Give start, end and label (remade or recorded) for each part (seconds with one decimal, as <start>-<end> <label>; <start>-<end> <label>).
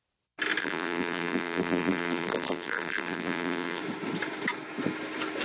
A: 0.0-0.6 recorded; 0.6-3.8 remade; 3.8-5.4 recorded